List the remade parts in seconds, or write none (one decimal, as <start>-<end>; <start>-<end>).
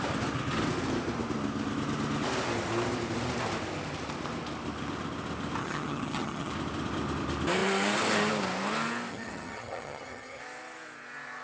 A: 5.6-6.5; 9.1-10.4